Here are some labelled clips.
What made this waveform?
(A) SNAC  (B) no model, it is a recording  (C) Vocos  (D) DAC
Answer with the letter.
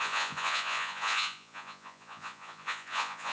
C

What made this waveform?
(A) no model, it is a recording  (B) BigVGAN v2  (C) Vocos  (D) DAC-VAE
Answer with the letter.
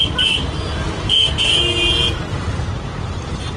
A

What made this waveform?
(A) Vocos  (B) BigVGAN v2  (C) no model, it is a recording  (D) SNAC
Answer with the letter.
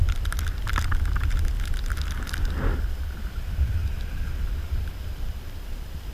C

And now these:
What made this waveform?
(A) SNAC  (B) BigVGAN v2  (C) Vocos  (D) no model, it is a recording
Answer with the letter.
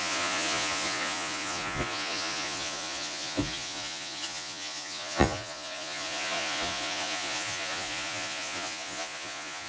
C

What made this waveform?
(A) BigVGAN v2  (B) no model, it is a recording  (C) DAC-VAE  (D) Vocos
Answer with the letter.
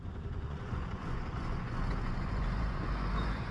D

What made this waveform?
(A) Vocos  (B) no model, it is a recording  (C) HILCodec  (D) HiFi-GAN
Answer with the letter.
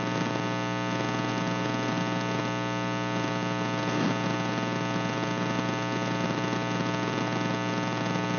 B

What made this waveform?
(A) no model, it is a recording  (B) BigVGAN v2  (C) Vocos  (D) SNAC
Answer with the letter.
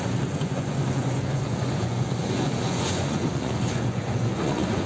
C